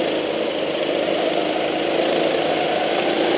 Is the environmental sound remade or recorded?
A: recorded